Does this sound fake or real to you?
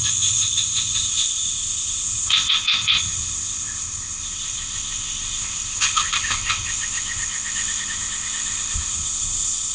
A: fake